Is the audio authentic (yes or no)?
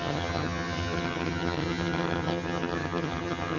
no